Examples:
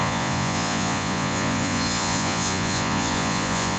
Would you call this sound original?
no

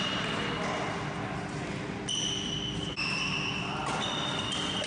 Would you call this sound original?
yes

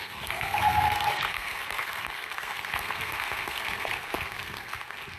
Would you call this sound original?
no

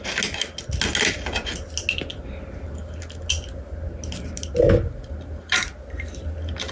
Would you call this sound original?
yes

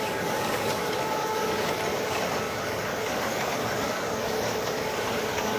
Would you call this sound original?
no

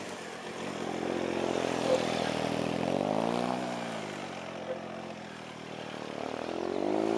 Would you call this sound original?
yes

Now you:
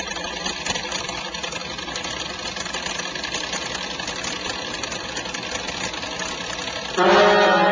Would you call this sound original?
yes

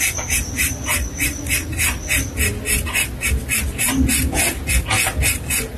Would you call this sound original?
yes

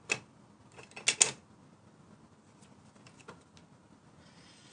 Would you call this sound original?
yes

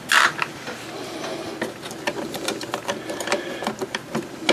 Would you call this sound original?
yes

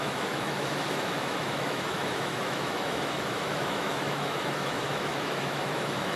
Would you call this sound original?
no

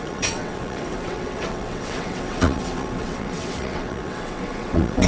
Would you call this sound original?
no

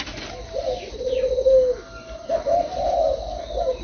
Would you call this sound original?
yes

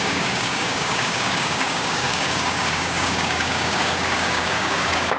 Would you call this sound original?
no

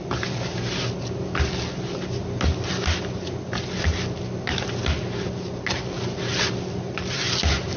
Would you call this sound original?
yes